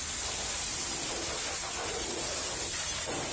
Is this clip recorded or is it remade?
recorded